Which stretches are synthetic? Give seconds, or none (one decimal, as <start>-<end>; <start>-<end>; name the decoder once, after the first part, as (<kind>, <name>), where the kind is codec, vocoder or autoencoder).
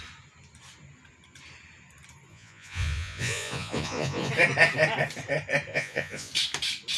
2.3-4.3 (vocoder, Vocos); 5.7-6.3